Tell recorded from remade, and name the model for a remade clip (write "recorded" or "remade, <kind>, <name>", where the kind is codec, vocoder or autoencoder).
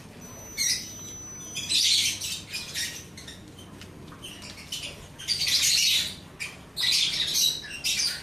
recorded